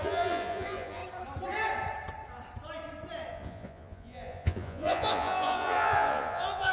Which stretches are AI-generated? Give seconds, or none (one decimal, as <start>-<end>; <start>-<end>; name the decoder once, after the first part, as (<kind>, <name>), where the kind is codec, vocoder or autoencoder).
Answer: 0.0-1.0 (vocoder, Vocos); 3.3-6.7